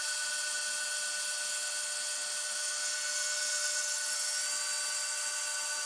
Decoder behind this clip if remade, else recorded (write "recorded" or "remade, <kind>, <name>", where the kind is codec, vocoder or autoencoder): recorded